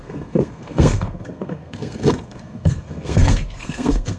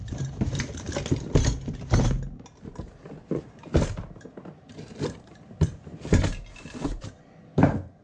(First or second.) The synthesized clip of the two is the first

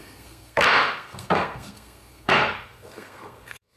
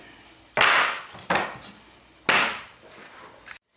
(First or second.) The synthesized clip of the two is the first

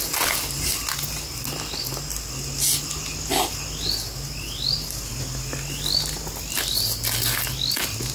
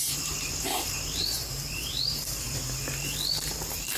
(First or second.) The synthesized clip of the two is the second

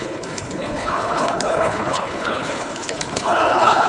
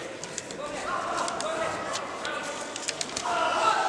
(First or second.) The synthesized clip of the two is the first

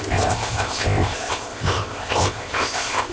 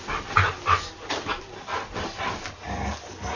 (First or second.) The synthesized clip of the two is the first